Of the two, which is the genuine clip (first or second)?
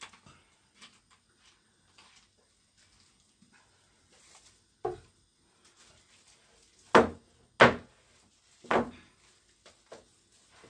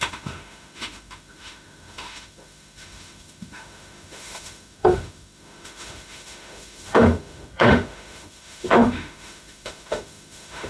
first